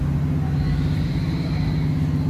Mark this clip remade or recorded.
recorded